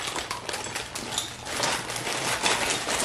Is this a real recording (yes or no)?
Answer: yes